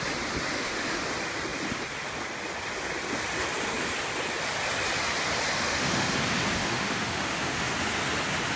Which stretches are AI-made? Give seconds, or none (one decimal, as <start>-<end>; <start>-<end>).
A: 0.5-1.0; 5.5-6.1; 6.6-7.7